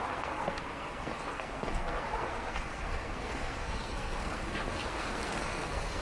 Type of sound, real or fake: fake